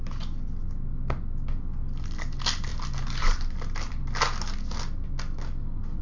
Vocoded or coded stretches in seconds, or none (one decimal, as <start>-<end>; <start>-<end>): none